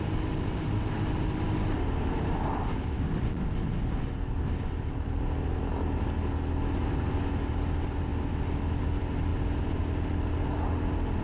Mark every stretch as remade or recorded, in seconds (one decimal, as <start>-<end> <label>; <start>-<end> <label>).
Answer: 0.0-11.2 recorded